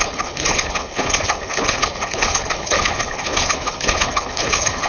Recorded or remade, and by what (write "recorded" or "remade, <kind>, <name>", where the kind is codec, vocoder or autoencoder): remade, codec, HILCodec